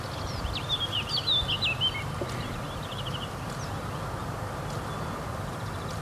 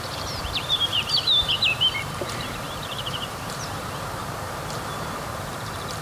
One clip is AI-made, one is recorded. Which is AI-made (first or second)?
second